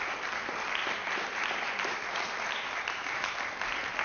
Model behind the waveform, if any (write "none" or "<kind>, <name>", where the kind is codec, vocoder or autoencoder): vocoder, BigVGAN v2